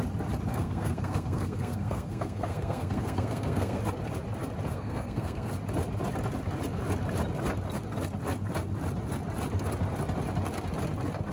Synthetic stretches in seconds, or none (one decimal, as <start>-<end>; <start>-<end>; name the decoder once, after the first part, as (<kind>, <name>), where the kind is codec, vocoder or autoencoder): 0.5-3.8 (codec, SNAC); 4.7-5.5